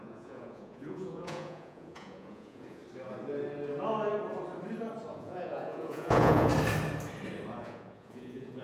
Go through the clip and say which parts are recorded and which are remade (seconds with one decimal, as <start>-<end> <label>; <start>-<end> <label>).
0.0-2.8 remade; 2.8-5.1 recorded; 5.1-6.5 remade; 6.5-7.6 recorded; 7.6-8.6 remade